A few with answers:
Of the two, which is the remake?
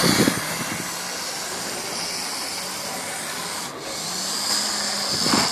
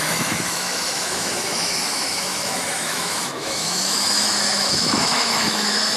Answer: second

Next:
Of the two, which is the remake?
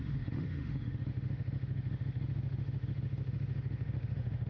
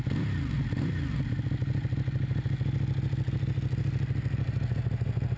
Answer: first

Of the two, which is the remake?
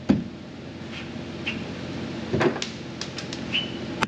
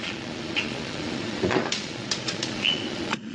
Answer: second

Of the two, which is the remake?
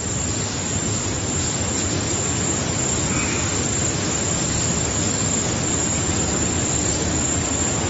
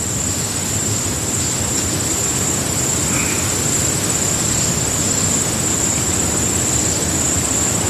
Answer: second